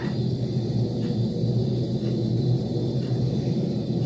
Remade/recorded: recorded